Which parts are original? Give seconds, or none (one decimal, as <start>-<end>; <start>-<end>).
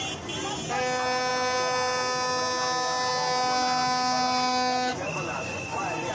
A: 0.0-4.9